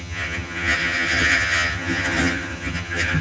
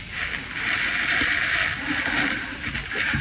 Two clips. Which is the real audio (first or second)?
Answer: second